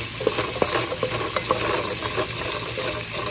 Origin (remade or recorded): recorded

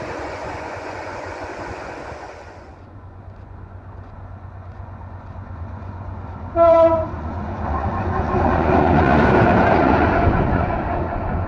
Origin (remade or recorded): remade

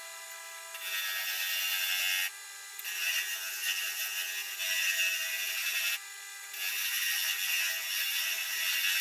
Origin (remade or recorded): recorded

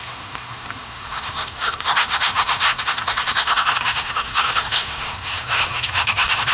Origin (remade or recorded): remade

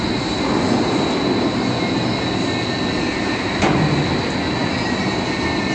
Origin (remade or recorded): recorded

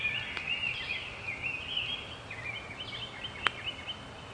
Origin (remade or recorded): recorded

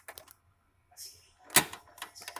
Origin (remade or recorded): recorded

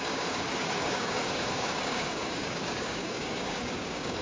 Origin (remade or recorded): remade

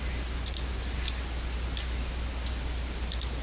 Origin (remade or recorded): recorded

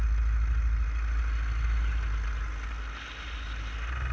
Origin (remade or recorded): recorded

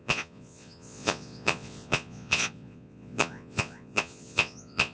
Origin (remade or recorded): remade